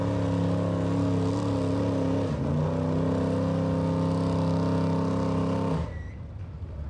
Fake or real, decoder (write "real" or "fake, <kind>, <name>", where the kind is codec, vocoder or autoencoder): real